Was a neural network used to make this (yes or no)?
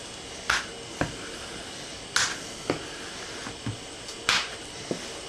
no